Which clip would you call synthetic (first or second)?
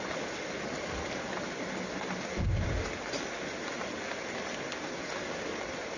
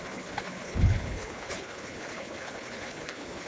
second